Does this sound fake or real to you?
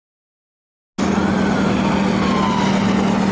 real